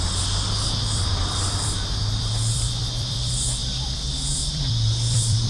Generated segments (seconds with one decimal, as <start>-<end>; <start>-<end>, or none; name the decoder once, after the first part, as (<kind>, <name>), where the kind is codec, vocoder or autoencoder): 0.0-5.5 (vocoder, BigVGAN v2)